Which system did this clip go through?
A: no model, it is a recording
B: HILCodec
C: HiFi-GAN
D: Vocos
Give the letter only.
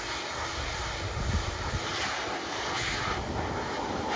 A